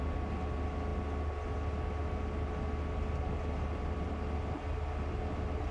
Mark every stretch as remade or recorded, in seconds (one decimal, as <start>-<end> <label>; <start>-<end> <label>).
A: 0.0-5.7 recorded